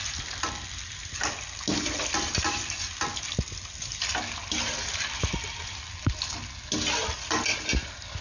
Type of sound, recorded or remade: recorded